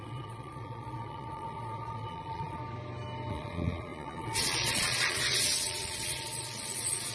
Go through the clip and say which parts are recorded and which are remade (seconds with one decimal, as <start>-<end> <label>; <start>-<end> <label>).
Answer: 0.0-2.6 remade; 2.6-3.3 recorded; 3.3-7.1 remade